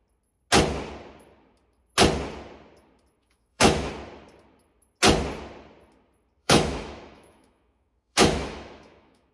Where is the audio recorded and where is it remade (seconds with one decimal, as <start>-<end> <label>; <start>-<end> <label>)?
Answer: 0.0-3.2 recorded; 3.2-3.9 remade; 3.9-6.4 recorded; 6.4-9.3 remade